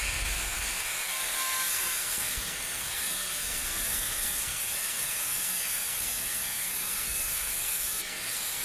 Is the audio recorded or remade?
remade